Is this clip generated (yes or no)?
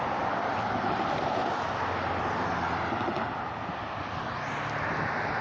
no